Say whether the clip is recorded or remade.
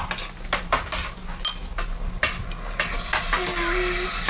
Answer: recorded